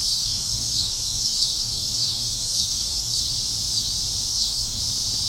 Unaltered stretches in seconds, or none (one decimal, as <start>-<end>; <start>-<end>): 3.2-4.3; 4.8-5.3